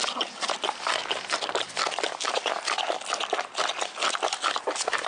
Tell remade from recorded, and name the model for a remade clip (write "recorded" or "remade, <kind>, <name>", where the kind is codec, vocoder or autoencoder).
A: recorded